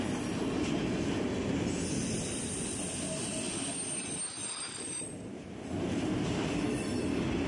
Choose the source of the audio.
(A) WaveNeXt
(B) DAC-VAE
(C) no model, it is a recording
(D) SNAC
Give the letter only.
C